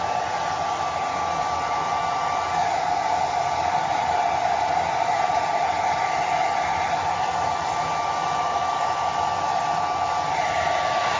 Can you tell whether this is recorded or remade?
recorded